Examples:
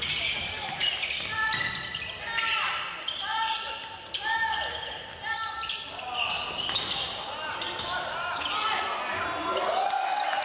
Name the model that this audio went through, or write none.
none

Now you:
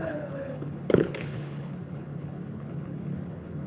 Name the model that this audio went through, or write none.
codec, HILCodec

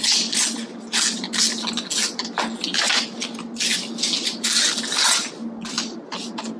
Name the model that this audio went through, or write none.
none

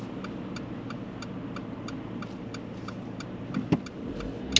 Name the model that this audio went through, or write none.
none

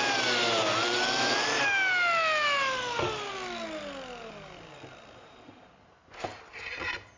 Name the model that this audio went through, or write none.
none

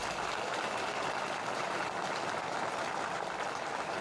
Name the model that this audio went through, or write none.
none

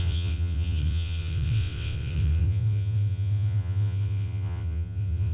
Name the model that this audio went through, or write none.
vocoder, WaveNeXt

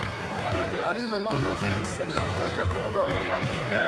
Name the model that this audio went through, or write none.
codec, SNAC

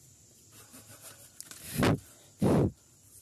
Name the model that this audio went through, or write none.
none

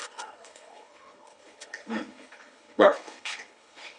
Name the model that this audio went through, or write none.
codec, HILCodec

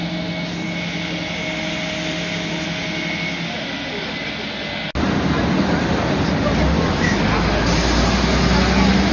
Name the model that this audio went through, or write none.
none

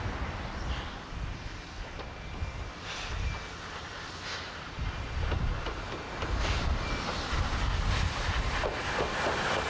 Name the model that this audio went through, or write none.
none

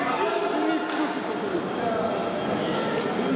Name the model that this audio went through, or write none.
none